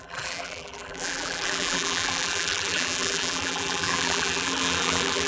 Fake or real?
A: fake